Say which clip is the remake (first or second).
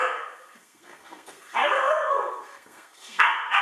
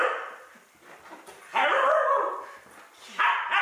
first